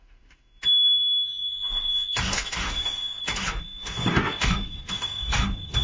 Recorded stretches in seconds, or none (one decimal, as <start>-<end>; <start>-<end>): none